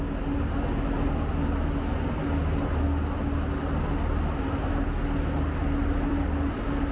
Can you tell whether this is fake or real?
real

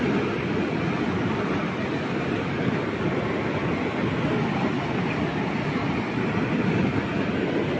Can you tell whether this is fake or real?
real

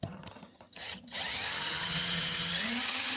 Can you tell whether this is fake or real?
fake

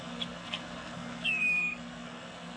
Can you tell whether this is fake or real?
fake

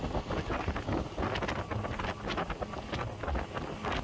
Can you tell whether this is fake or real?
real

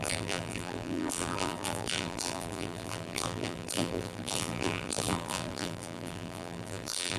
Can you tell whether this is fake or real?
fake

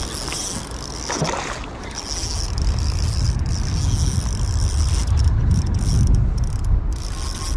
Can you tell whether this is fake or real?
real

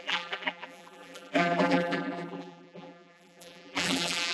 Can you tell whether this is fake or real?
fake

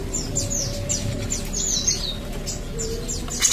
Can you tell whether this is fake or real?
real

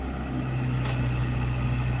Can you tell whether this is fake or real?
real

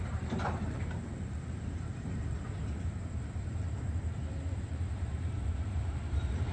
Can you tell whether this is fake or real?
fake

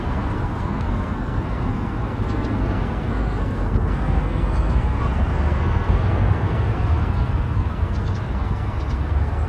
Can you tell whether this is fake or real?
fake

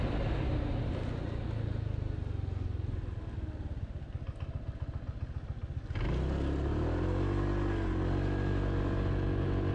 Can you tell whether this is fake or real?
real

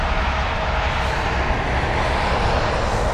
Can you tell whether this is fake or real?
real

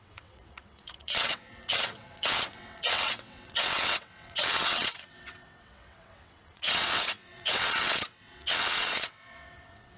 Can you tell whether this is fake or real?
fake